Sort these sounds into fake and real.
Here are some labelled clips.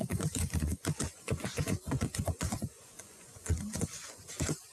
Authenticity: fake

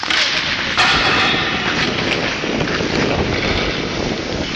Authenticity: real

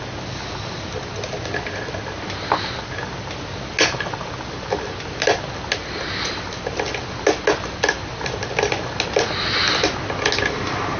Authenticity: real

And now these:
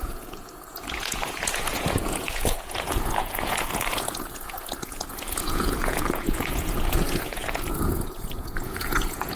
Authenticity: fake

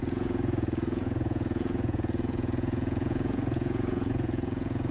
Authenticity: fake